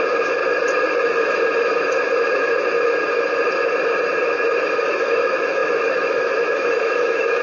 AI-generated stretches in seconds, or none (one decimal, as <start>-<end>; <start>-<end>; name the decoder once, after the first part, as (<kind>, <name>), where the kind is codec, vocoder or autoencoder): 0.0-0.4 (autoencoder, DAC-VAE); 4.8-7.4